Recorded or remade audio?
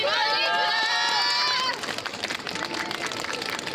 recorded